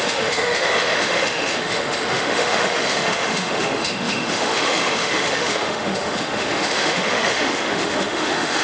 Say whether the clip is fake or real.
fake